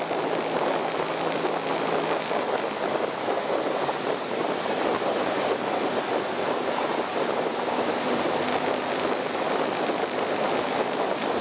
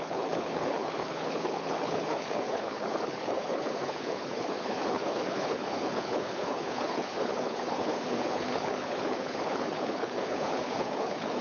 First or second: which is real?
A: first